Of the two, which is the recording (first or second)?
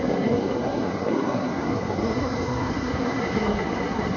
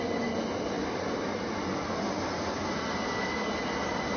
second